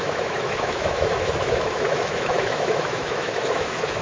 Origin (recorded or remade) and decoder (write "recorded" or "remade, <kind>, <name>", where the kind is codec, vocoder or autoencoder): remade, autoencoder, DAC-VAE